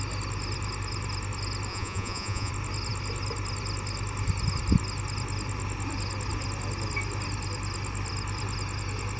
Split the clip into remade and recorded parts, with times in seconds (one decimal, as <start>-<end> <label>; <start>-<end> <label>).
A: 0.0-1.7 recorded; 1.7-2.5 remade; 2.5-9.2 recorded